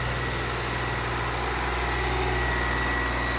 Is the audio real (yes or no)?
yes